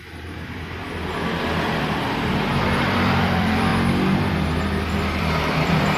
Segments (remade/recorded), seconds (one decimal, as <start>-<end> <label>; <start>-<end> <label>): 0.0-3.7 remade; 3.7-4.9 recorded; 4.9-6.0 remade